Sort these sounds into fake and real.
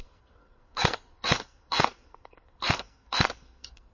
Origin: fake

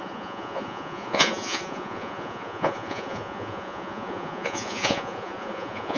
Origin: fake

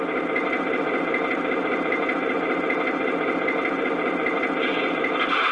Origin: fake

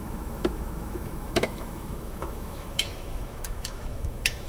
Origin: fake